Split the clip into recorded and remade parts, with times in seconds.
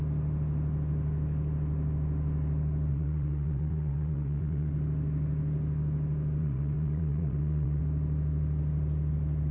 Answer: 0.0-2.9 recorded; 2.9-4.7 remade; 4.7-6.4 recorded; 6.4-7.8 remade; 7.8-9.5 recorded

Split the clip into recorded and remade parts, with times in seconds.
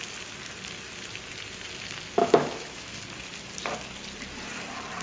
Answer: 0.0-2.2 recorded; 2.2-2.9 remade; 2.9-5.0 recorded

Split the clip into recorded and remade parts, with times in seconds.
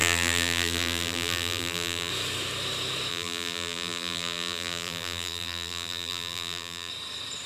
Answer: 0.0-2.1 remade; 2.1-3.1 recorded; 3.1-6.9 remade; 6.9-7.5 recorded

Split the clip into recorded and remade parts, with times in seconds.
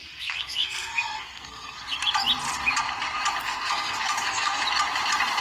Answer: 0.0-1.8 remade; 1.8-3.4 recorded; 3.4-4.6 remade; 4.6-5.4 recorded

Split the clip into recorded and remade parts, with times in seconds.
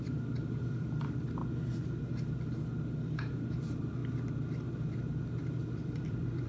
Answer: 0.0-1.4 remade; 1.4-3.5 recorded; 3.5-4.0 remade; 4.0-4.7 recorded; 4.7-6.5 remade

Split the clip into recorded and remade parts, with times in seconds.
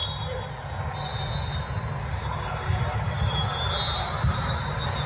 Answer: 0.0-5.1 recorded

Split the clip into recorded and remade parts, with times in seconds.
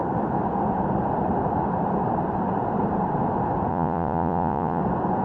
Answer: 0.0-3.7 recorded; 3.7-4.8 remade; 4.8-5.2 recorded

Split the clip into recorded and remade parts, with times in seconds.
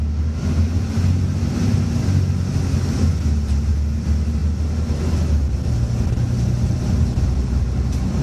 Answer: 0.0-8.2 recorded